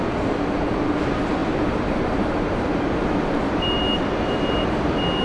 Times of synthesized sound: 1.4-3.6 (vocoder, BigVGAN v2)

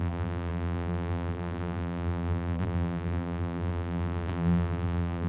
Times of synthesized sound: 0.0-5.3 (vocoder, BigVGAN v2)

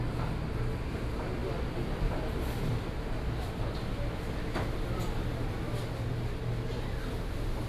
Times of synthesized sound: none

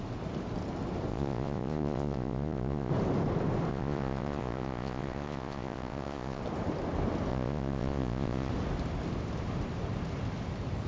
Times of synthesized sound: 1.1-2.9 (vocoder, Vocos); 3.7-6.4; 7.3-8.5